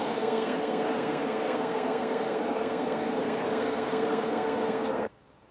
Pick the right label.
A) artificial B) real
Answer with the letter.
A